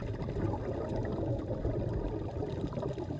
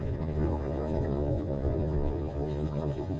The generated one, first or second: second